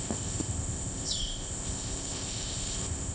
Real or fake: fake